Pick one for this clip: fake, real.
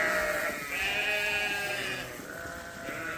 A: real